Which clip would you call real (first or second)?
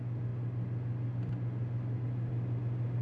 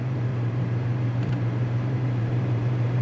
first